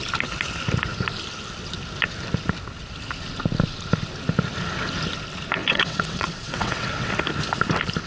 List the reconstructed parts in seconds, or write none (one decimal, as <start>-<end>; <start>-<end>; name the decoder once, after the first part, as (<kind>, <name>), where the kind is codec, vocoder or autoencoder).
5.6-7.1 (vocoder, WaveNeXt)